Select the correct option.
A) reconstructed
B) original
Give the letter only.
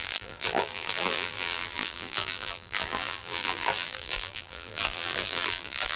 A